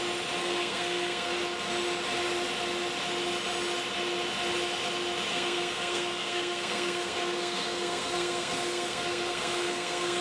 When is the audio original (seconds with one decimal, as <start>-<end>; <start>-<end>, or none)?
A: 0.0-0.4; 1.3-5.3